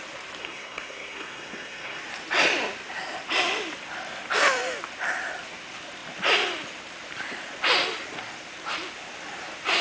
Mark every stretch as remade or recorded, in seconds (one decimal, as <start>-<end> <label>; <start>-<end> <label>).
0.0-0.4 recorded; 0.4-2.0 remade; 2.0-9.8 recorded